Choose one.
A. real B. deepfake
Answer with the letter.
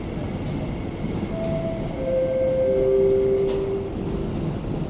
A